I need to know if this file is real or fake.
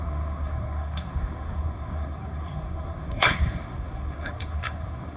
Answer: fake